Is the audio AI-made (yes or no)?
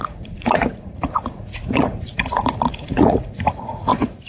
yes